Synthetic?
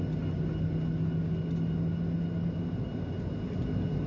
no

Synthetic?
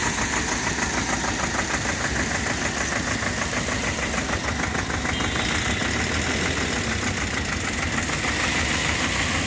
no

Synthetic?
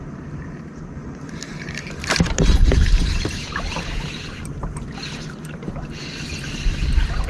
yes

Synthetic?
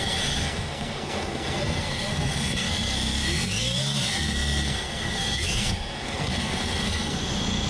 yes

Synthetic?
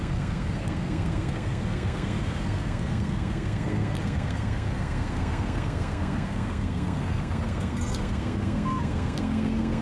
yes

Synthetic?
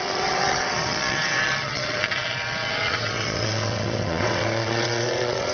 yes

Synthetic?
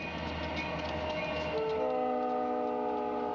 no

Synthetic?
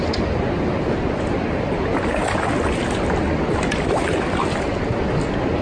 no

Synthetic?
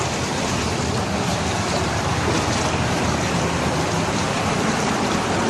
yes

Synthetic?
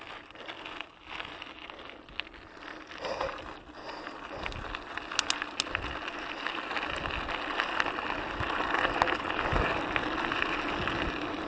no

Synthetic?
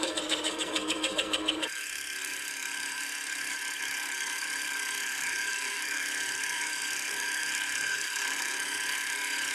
yes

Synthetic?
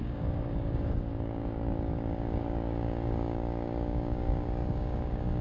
yes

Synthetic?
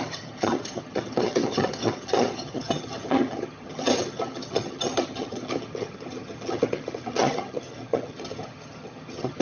yes